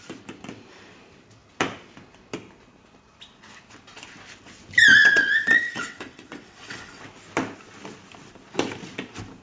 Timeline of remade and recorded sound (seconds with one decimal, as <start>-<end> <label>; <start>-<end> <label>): 0.0-4.9 recorded; 4.9-7.0 remade; 7.0-9.4 recorded